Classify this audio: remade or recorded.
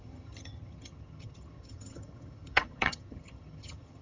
remade